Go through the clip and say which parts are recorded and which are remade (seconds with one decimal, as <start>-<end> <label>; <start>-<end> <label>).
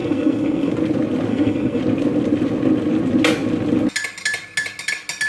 0.0-0.7 remade; 0.7-1.3 recorded; 1.3-1.8 remade; 1.8-5.3 recorded